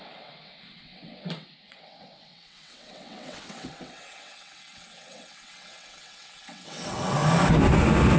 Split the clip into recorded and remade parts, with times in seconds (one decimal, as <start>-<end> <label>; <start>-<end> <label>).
0.0-7.2 remade; 7.2-8.2 recorded